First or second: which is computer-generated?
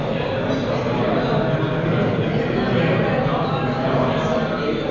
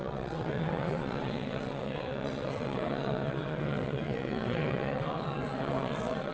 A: second